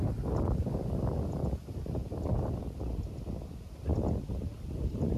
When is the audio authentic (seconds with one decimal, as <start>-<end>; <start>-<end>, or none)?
0.0-2.0; 2.6-3.9